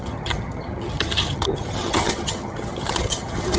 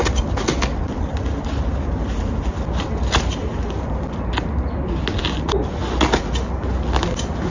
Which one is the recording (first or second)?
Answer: second